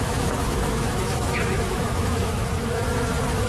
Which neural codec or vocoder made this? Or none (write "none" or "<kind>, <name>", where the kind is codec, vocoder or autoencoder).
autoencoder, DAC-VAE